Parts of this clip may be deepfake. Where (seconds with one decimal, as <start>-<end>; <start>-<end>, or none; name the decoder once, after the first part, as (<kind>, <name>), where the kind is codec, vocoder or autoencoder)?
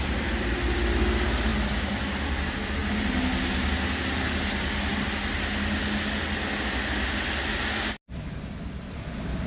1.5-2.0 (vocoder, BigVGAN v2)